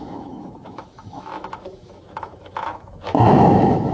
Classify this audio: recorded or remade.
remade